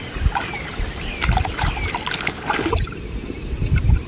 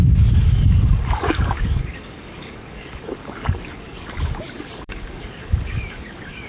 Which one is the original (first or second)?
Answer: first